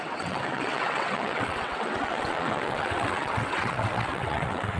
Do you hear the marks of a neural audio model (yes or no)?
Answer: yes